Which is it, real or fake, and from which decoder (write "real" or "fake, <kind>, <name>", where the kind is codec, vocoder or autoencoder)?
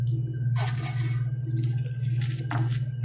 real